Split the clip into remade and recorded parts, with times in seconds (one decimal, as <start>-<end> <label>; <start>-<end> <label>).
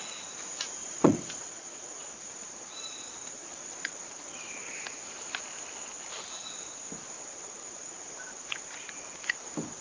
0.0-0.8 recorded; 0.8-1.9 remade; 1.9-3.4 recorded; 3.4-4.5 remade; 4.5-7.3 recorded; 7.3-8.0 remade; 8.0-9.8 recorded